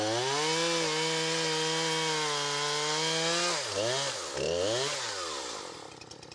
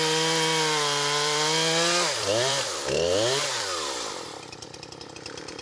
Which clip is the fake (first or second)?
second